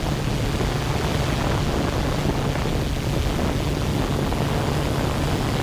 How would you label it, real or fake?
real